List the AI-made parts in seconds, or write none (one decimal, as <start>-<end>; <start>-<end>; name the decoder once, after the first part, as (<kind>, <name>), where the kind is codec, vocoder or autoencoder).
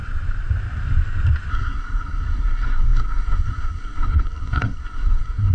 1.5-5.5 (codec, SNAC)